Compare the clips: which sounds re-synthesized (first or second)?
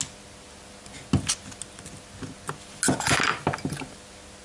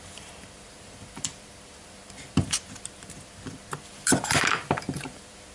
second